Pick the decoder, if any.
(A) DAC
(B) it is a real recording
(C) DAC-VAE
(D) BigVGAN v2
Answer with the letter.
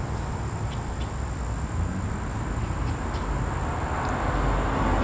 B